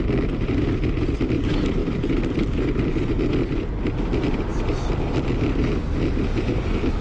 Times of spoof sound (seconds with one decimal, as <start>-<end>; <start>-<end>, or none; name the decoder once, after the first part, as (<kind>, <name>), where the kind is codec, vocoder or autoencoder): 4.5-5.3 (vocoder, BigVGAN v2)